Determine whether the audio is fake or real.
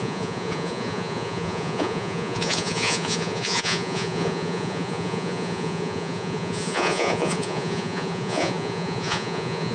fake